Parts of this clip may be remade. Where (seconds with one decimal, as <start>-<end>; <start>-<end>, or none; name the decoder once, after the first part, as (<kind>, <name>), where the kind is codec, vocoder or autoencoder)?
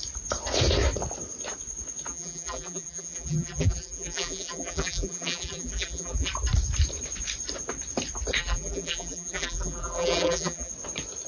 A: 2.1-6.3 (vocoder, BigVGAN v2); 8.4-10.7